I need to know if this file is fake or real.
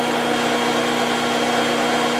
real